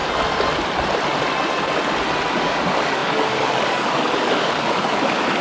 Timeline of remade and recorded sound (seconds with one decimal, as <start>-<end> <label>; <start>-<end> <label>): 0.0-2.3 recorded; 2.3-5.4 remade